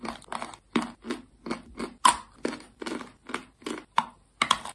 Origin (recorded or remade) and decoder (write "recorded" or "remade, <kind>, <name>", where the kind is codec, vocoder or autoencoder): recorded